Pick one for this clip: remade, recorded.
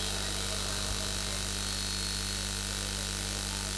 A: recorded